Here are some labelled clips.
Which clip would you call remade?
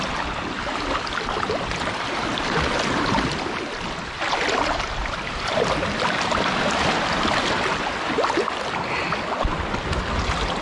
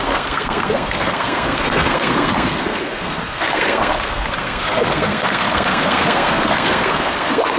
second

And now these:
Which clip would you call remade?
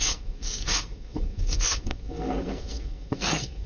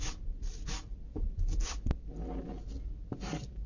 first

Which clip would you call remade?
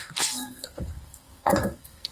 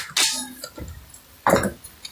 first